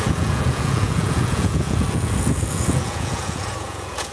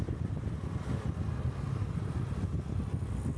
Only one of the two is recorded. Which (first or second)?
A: second